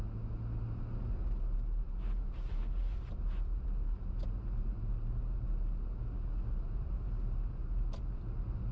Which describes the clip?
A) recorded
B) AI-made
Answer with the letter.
A